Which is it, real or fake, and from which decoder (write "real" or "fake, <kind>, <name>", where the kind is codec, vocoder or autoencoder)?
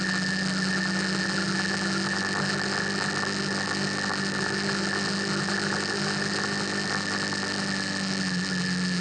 real